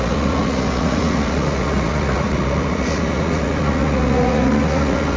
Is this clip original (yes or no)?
no